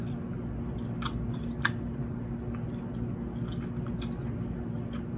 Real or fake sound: real